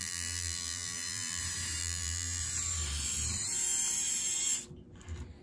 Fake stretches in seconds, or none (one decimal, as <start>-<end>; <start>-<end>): 0.0-1.4; 1.8-2.4